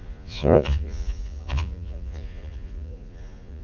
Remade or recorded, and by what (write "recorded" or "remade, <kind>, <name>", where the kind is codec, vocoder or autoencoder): remade, vocoder, Vocos